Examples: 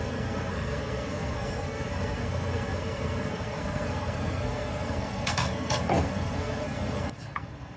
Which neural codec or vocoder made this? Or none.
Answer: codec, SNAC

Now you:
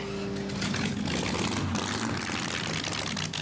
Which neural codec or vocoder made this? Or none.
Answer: none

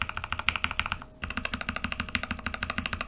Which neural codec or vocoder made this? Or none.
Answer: none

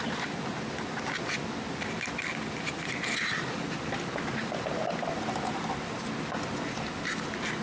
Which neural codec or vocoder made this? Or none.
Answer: none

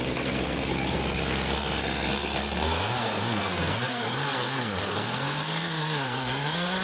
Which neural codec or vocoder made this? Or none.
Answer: codec, SNAC